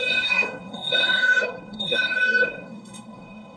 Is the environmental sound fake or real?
fake